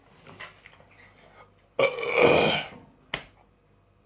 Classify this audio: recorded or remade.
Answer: recorded